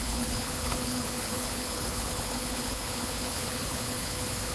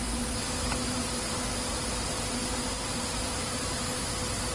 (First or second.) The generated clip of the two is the first